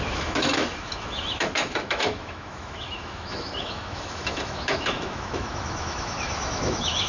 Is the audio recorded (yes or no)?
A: no